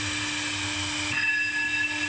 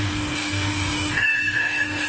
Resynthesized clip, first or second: second